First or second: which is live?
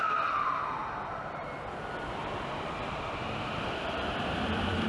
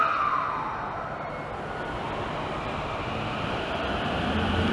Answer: second